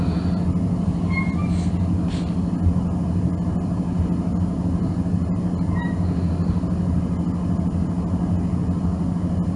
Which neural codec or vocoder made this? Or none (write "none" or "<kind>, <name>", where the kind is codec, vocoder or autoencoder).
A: none